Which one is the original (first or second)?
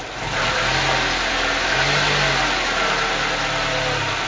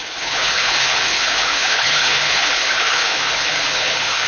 first